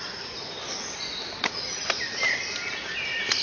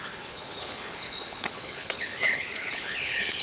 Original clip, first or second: first